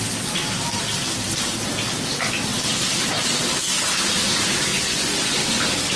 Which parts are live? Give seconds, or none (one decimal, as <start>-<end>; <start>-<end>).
0.0-4.7; 5.6-6.0